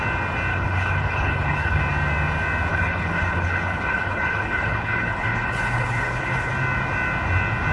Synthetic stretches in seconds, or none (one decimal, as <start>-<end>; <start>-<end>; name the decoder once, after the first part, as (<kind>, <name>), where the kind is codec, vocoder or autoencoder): 0.5-1.8 (codec, HILCodec); 2.7-6.5